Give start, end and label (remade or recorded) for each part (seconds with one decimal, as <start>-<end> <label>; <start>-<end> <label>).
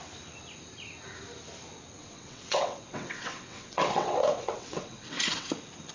0.0-2.0 recorded; 2.0-5.5 remade; 5.5-5.9 recorded